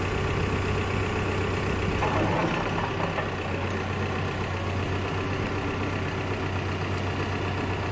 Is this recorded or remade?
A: recorded